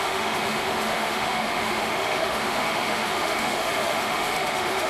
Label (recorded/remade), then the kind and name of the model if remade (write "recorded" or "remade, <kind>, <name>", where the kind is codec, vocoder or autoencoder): remade, autoencoder, DAC-VAE